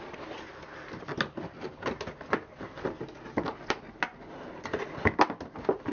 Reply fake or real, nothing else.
real